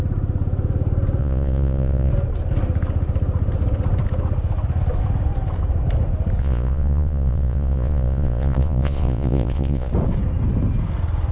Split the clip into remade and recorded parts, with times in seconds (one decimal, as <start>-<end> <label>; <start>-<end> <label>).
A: 0.0-1.2 recorded; 1.2-2.1 remade; 2.1-6.4 recorded; 6.4-9.9 remade; 9.9-11.3 recorded